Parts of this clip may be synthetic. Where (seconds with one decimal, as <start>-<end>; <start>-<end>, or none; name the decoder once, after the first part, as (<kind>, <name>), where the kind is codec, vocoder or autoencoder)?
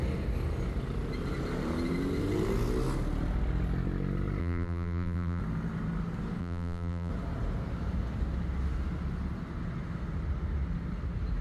4.4-5.4 (vocoder, BigVGAN v2); 6.4-7.1